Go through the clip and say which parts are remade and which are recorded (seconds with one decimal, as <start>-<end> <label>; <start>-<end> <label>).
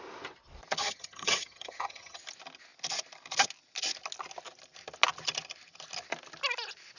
0.0-0.8 recorded; 0.8-2.2 remade; 2.2-7.0 recorded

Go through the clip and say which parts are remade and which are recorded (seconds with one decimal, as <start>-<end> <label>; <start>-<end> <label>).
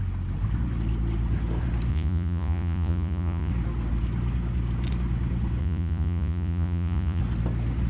0.0-1.9 recorded; 1.9-3.5 remade; 3.5-5.6 recorded; 5.6-7.2 remade; 7.2-7.9 recorded